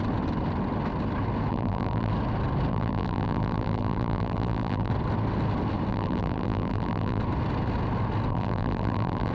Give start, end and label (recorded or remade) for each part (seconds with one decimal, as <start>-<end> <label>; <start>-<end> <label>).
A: 0.0-1.5 recorded; 1.5-2.1 remade; 2.1-2.7 recorded; 2.7-4.9 remade; 4.9-5.9 recorded; 5.9-7.2 remade; 7.2-8.3 recorded; 8.3-9.3 remade